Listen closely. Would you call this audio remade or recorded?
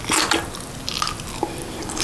recorded